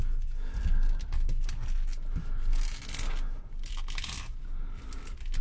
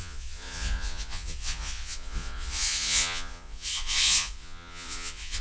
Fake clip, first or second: second